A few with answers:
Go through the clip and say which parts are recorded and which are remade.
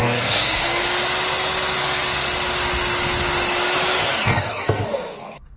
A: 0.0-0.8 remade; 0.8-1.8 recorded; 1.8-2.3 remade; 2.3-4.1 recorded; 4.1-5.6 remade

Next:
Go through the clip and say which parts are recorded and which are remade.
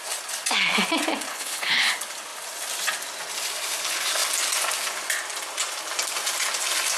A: 0.0-1.3 recorded; 1.3-1.9 remade; 1.9-7.0 recorded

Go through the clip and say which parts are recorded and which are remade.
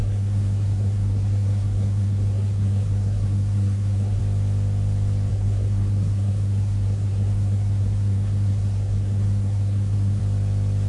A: 0.0-4.2 remade; 4.2-5.3 recorded; 5.3-10.2 remade; 10.2-10.9 recorded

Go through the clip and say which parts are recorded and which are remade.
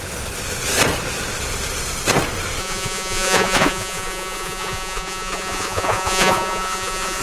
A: 0.0-2.6 recorded; 2.6-7.2 remade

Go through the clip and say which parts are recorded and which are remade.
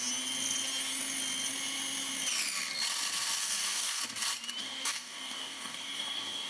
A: 0.0-3.4 recorded; 3.4-4.0 remade; 4.0-4.6 recorded; 4.6-6.5 remade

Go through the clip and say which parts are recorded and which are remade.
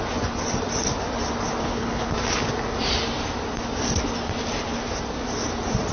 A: 0.0-1.6 recorded; 1.6-2.1 remade; 2.1-5.9 recorded